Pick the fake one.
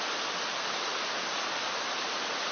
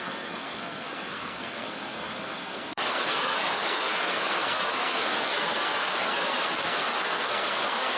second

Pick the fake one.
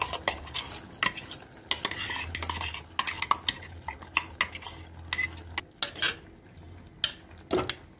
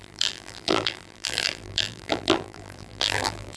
second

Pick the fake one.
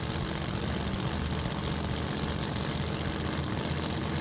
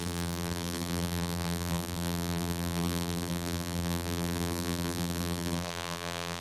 second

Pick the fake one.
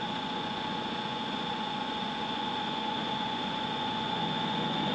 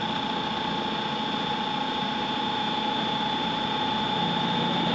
first